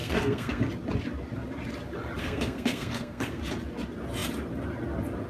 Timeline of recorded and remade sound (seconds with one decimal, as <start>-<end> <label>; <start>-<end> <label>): 0.0-0.6 remade; 0.6-2.2 recorded; 2.2-3.4 remade; 3.4-5.3 recorded